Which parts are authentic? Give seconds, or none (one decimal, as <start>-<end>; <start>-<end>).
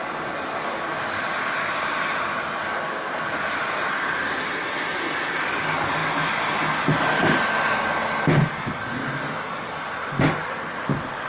0.0-11.3